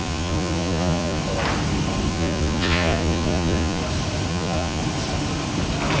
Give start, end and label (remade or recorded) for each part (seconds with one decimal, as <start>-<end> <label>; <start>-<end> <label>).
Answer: 0.0-1.2 remade; 1.2-2.1 recorded; 2.1-3.8 remade; 3.8-4.3 recorded; 4.3-4.8 remade; 4.8-6.0 recorded